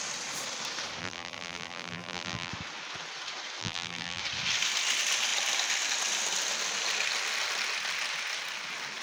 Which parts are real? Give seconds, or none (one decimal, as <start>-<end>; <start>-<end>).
0.0-1.0; 2.5-3.6; 4.2-9.0